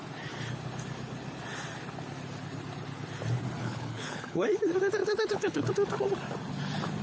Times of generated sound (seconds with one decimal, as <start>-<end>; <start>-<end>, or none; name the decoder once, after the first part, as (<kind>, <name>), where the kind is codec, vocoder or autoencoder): 3.6-4.5 (codec, HILCodec); 5.0-5.7